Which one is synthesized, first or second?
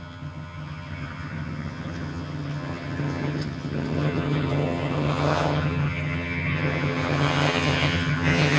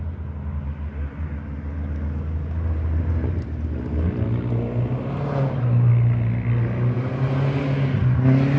first